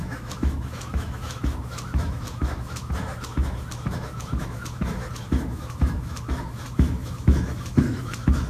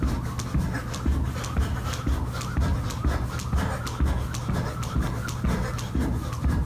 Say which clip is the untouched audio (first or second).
second